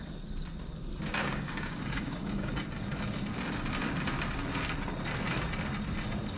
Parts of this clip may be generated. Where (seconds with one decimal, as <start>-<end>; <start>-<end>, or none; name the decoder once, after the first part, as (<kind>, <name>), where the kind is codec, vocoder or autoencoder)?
1.2-2.5 (codec, DAC)